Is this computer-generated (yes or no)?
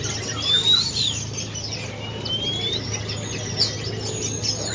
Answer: no